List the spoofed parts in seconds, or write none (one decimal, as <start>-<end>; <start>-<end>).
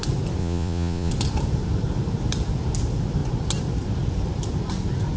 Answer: 0.4-1.1